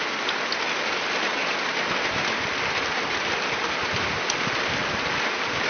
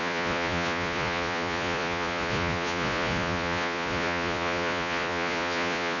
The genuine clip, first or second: first